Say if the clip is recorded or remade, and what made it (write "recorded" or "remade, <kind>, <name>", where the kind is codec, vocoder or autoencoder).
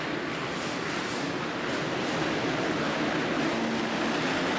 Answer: recorded